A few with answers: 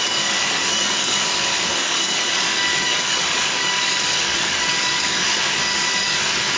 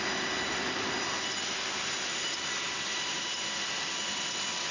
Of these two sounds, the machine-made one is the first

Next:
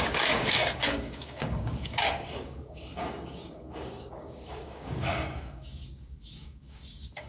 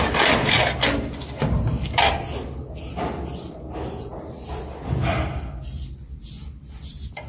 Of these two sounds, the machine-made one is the first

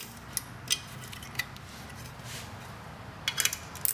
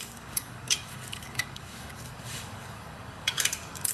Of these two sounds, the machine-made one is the second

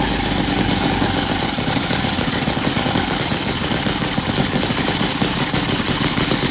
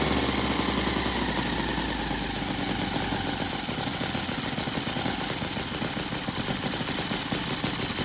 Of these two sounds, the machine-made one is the first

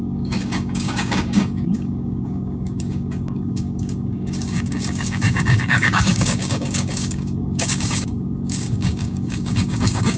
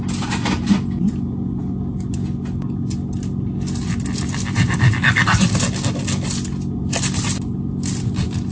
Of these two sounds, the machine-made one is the first